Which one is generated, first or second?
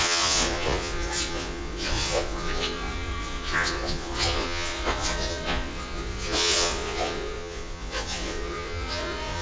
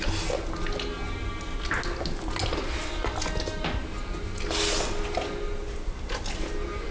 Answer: first